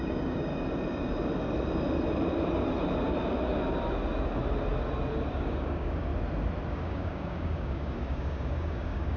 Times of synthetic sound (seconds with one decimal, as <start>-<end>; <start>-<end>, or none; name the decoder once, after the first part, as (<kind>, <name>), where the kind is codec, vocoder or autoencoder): 0.0-0.5 (codec, DAC); 5.3-6.1; 6.7-9.2